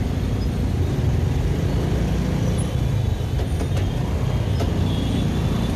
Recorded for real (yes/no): yes